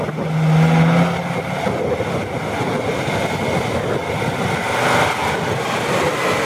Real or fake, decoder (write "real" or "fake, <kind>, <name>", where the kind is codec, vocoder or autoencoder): real